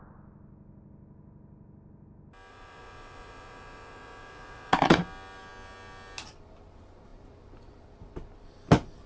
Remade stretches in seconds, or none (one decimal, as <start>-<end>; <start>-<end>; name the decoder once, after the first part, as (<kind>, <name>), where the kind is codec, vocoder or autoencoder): 2.5-5.0 (vocoder, Vocos)